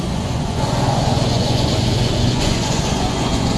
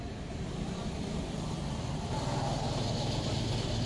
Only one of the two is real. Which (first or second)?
second